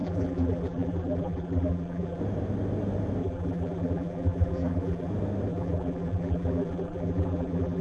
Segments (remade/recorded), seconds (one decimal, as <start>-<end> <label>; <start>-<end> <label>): 0.0-2.2 remade; 2.2-3.2 recorded; 3.2-5.1 remade; 5.1-5.5 recorded; 5.5-7.8 remade